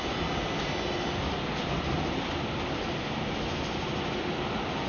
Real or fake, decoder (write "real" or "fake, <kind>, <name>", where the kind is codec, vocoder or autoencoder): real